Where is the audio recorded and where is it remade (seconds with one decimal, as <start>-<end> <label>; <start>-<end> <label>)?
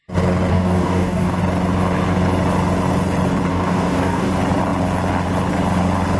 0.0-0.5 recorded; 0.5-1.4 remade; 1.4-3.5 recorded; 3.5-4.3 remade; 4.3-6.2 recorded